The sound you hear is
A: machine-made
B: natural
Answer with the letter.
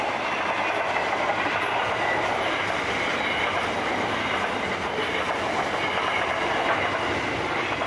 B